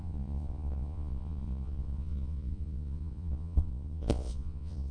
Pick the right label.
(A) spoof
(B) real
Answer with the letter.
A